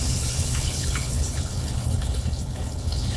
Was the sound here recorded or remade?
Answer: remade